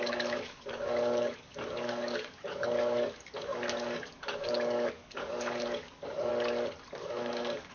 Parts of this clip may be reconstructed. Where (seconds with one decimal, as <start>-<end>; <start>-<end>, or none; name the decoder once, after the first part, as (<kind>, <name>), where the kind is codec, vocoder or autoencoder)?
0.0-6.3 (codec, DAC); 6.9-7.7

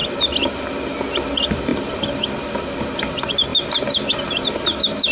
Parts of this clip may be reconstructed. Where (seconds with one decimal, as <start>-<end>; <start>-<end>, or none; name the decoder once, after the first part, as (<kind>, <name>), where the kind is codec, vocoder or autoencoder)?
none

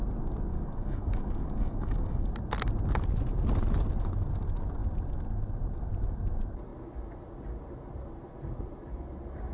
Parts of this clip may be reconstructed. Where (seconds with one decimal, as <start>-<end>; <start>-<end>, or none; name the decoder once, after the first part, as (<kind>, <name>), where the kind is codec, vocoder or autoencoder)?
0.5-2.3 (codec, DAC)

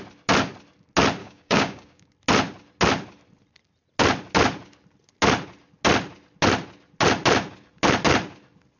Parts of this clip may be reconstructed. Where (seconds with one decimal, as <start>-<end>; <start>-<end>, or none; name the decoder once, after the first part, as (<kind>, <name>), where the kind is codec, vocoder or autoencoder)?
1.2-2.1 (codec, DAC)

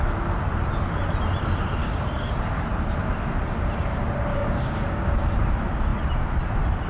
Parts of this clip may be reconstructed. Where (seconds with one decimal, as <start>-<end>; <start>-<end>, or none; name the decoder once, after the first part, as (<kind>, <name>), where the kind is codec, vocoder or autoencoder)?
1.8-2.3 (codec, DAC); 4.3-5.1